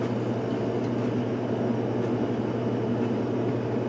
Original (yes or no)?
yes